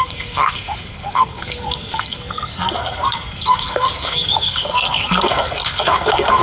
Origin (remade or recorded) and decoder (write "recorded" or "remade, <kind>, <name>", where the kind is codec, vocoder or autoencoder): remade, codec, SNAC